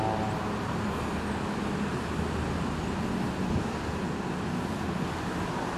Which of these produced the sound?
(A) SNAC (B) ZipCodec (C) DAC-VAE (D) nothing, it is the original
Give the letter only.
D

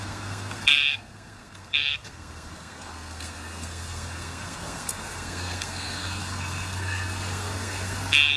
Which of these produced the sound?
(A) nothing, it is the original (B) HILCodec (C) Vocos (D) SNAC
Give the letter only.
D